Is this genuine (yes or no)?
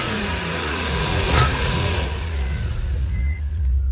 no